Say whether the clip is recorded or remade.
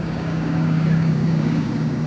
remade